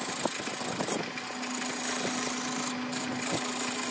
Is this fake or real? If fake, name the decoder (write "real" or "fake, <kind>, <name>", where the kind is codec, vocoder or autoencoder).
real